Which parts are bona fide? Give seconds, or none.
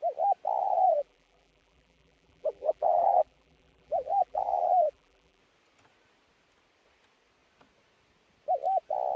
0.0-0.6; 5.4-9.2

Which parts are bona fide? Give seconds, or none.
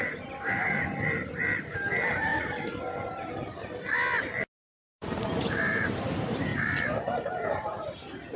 2.3-4.8